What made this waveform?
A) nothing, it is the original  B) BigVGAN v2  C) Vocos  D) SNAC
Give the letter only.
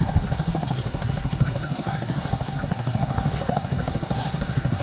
D